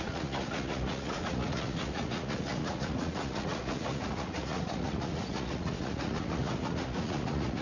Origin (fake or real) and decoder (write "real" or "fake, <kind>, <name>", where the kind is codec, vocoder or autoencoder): fake, vocoder, Vocos